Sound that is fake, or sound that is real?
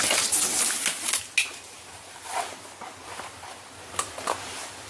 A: real